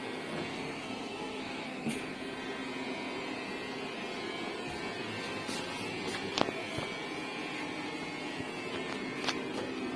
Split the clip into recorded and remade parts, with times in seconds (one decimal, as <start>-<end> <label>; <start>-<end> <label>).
0.0-0.5 recorded; 0.5-1.9 remade; 1.9-10.0 recorded